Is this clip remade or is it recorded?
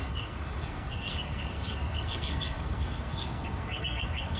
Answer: remade